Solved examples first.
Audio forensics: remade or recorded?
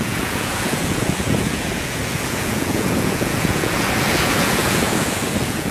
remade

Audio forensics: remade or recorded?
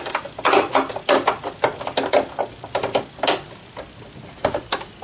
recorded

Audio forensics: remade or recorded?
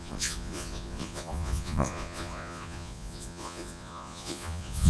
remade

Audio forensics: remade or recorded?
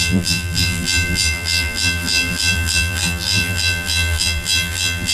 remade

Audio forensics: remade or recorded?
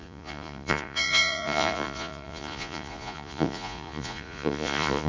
remade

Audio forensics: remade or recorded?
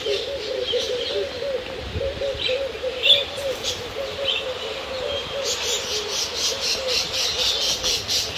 recorded